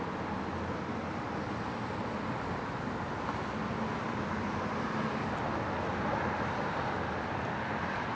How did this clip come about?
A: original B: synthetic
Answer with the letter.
A